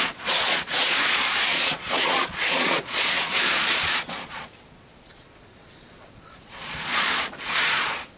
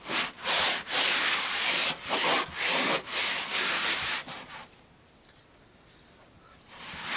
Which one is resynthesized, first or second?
first